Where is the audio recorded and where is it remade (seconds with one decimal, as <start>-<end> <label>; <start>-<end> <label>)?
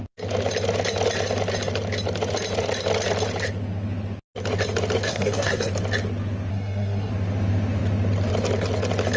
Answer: 0.0-5.1 recorded; 5.1-5.7 remade; 5.7-6.5 recorded; 6.5-7.1 remade; 7.1-9.2 recorded